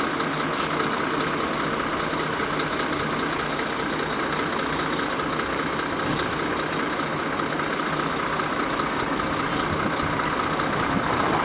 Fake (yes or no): no